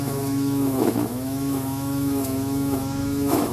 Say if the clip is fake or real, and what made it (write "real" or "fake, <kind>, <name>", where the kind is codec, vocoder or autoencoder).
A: fake, autoencoder, DAC-VAE